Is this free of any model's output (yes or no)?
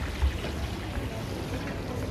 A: yes